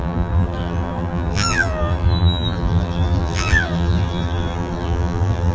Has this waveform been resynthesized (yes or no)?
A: yes